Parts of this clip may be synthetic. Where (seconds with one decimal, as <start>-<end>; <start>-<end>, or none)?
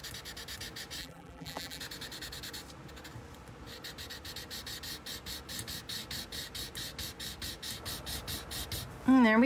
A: 1.0-1.8